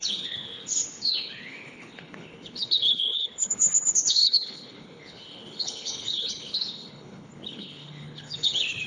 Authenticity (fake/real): fake